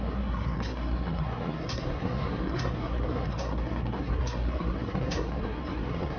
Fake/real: fake